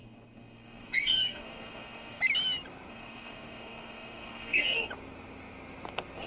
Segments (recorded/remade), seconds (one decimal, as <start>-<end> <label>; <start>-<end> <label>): 0.0-2.2 remade; 2.2-2.9 recorded; 2.9-4.9 remade; 4.9-6.3 recorded